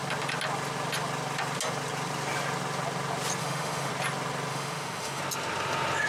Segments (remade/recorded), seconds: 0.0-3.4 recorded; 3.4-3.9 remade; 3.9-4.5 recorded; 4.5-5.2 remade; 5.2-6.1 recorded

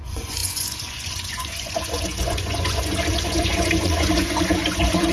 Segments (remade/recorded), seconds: 0.0-5.1 remade

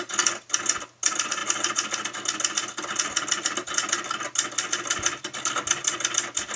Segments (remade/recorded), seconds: 0.0-6.6 recorded